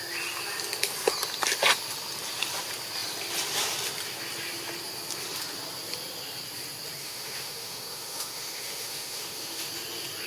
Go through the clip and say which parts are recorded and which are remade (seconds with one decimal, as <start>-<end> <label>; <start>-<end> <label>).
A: 0.0-7.0 recorded; 7.0-9.7 remade; 9.7-10.3 recorded

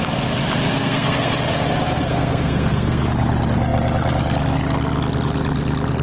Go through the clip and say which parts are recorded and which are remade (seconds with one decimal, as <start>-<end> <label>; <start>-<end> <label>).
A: 0.0-0.7 recorded; 0.7-1.3 remade; 1.3-2.0 recorded; 2.0-3.0 remade; 3.0-6.0 recorded

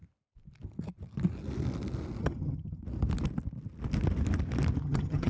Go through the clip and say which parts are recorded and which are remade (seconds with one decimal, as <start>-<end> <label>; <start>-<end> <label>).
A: 0.0-2.2 recorded; 2.2-2.8 remade; 2.8-4.8 recorded; 4.8-5.3 remade

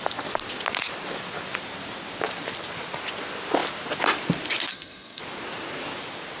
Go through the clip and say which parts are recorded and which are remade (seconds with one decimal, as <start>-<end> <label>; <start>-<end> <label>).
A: 0.0-4.7 recorded; 4.7-5.2 remade; 5.2-6.4 recorded

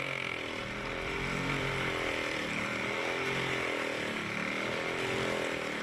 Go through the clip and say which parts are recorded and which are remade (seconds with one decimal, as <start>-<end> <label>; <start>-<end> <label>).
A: 0.0-2.7 remade; 2.7-4.5 recorded; 4.5-5.8 remade

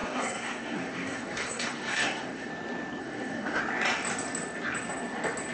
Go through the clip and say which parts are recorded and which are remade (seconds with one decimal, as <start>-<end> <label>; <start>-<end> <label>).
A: 0.0-2.5 remade; 2.5-3.0 recorded; 3.0-3.6 remade; 3.6-5.5 recorded

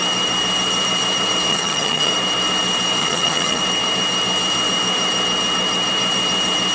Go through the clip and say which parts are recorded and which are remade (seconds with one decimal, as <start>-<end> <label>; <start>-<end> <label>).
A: 0.0-1.5 recorded; 1.5-2.1 remade; 2.1-3.0 recorded; 3.0-3.6 remade; 3.6-6.7 recorded

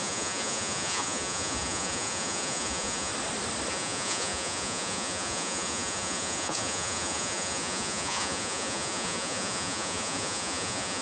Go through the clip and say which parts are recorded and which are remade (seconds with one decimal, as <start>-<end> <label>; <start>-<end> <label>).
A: 0.0-3.1 remade; 3.1-3.7 recorded; 3.7-11.0 remade